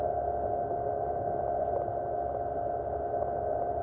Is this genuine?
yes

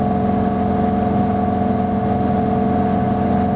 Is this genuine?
yes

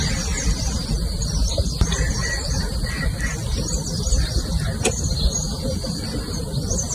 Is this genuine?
yes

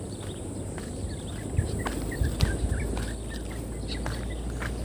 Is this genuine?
yes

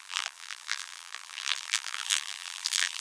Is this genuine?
no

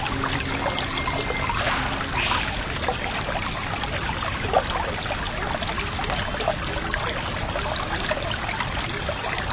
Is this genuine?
yes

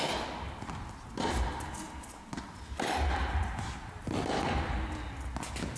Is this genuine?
yes